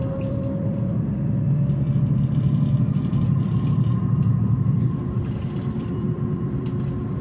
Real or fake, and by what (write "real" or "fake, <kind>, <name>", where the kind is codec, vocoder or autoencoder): fake, vocoder, BigVGAN v2